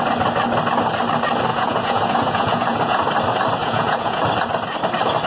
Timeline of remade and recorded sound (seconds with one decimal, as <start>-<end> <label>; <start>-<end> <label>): 0.0-1.5 recorded; 1.5-3.1 remade; 3.1-3.6 recorded; 3.6-4.2 remade; 4.2-5.3 recorded